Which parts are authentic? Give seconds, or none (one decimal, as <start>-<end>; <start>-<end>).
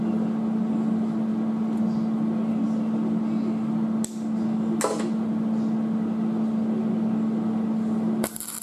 0.0-8.6